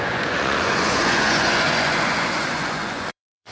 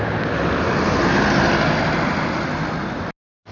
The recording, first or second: second